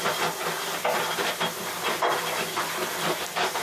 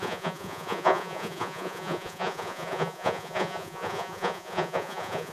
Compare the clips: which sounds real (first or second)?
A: first